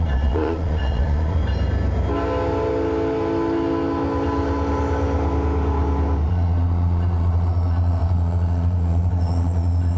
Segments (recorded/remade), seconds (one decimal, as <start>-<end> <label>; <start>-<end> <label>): 0.0-1.4 remade; 1.4-6.3 recorded; 6.3-10.0 remade